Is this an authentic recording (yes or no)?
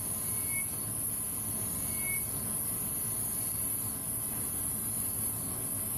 yes